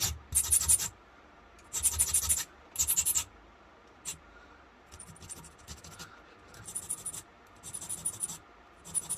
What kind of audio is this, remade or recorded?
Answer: recorded